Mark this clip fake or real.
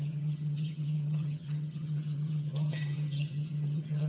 fake